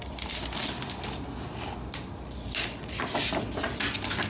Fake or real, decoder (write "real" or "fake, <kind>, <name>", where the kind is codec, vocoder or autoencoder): real